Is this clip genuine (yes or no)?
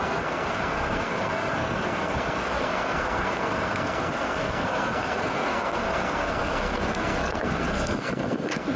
no